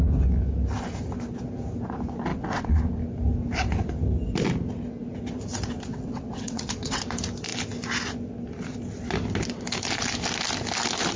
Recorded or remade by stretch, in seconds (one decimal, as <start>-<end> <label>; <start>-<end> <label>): 0.0-2.3 recorded; 2.3-2.8 remade; 2.8-5.9 recorded; 5.9-7.0 remade; 7.0-11.2 recorded